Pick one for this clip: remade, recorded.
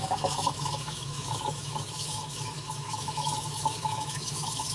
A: remade